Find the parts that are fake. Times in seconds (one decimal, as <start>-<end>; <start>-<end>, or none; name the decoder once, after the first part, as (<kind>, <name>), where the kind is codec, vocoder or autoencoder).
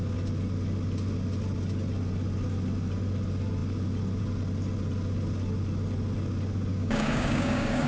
6.7-7.9 (codec, DAC)